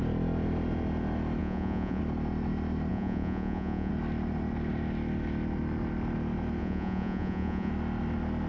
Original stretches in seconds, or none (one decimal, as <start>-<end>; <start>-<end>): 0.0-1.4; 2.0-2.9; 3.9-6.6; 7.7-8.5

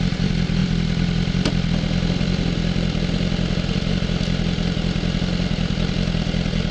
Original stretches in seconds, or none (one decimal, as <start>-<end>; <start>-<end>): 0.0-6.7

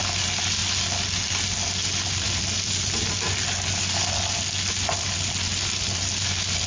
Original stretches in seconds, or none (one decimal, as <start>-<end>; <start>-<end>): 0.0-6.7

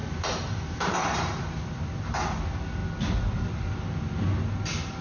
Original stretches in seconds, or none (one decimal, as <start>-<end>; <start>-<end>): 1.6-5.0

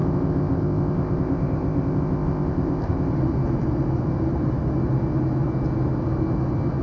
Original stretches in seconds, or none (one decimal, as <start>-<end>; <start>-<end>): 3.1-6.8

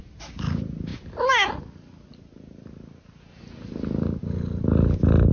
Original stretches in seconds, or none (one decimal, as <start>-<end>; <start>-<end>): 0.0-5.3